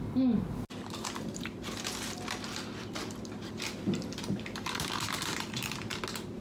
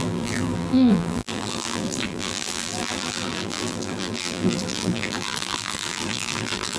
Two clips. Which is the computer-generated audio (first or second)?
second